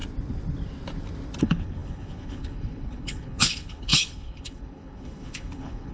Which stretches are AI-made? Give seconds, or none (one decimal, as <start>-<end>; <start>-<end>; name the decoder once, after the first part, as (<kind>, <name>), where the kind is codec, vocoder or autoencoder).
1.4-5.9 (codec, HILCodec)